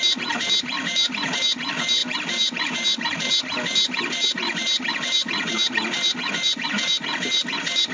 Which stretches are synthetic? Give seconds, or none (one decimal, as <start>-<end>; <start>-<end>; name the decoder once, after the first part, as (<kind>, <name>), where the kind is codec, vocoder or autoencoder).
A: none